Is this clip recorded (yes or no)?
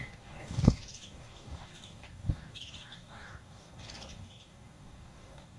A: no